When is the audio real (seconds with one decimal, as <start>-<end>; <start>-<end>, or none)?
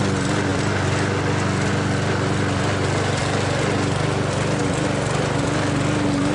0.0-6.3